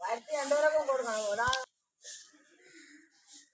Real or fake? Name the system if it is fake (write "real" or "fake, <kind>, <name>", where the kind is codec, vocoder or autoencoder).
real